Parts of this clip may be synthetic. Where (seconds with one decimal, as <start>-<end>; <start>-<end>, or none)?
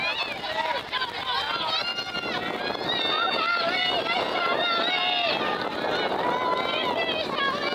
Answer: none